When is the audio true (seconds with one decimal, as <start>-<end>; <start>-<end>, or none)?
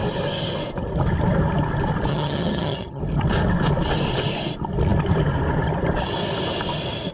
0.0-2.1; 3.0-7.1